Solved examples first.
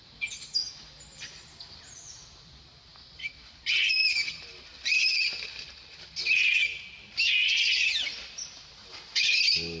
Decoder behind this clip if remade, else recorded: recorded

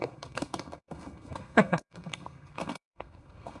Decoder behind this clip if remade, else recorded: remade, codec, SNAC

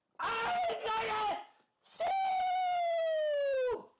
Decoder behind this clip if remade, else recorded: recorded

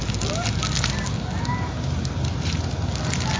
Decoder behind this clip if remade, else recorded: recorded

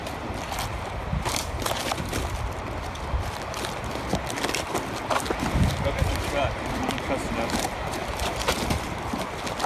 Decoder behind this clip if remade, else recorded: recorded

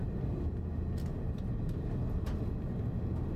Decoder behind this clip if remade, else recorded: recorded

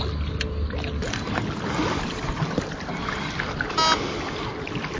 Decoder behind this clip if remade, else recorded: recorded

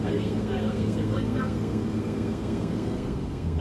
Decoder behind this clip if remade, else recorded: remade, codec, SNAC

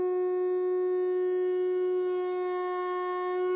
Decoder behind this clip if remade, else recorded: recorded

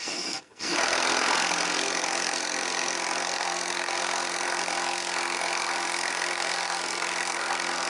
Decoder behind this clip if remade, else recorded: remade, codec, SNAC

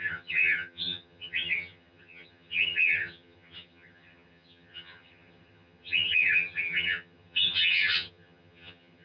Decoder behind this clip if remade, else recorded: remade, vocoder, HiFi-GAN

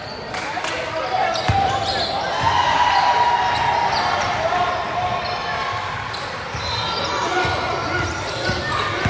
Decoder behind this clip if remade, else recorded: recorded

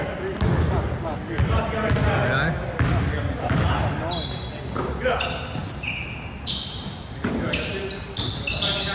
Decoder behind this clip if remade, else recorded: recorded